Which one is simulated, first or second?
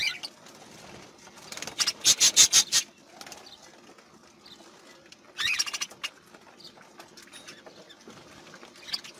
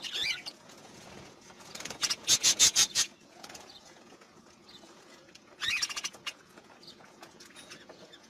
second